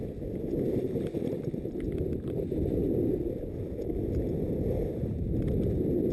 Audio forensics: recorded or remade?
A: recorded